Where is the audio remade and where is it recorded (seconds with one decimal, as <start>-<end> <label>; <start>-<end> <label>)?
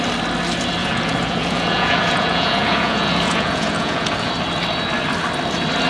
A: 0.0-0.8 recorded; 0.8-4.3 remade; 4.3-5.9 recorded